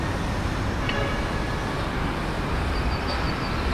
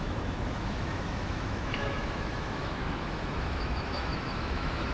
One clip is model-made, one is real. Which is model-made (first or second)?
second